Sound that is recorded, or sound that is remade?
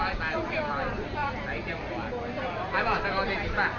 recorded